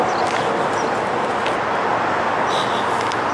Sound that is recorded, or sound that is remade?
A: recorded